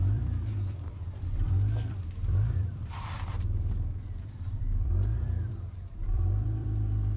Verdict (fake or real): fake